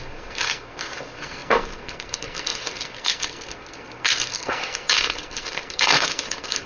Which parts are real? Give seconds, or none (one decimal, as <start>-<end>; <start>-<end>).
none

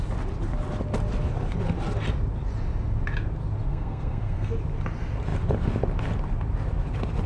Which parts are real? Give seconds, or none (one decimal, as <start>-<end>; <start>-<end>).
0.0-3.7; 4.5-7.3

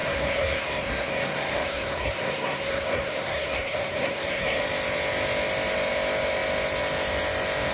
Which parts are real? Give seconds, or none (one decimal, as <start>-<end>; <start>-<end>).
4.6-7.7

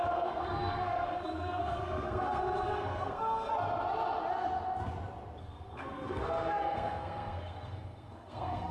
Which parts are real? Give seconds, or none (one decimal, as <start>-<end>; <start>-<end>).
3.5-5.4

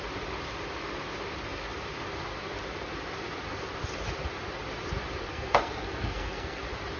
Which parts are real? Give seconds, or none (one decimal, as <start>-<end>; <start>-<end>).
0.0-5.3; 6.6-7.0